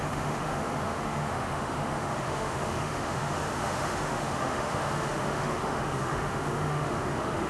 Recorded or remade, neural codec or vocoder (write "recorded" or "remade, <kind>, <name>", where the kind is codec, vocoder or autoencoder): remade, autoencoder, DAC-VAE